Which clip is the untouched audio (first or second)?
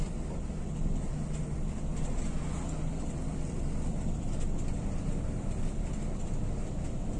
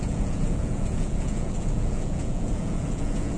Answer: first